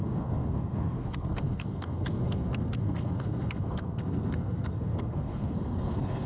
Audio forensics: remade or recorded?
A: remade